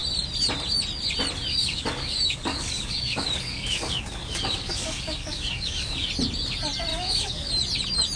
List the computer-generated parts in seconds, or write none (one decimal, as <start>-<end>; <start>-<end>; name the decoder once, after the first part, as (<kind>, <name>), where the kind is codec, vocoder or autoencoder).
1.5-6.1 (codec, DAC); 6.9-7.5